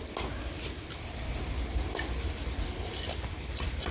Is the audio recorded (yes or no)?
yes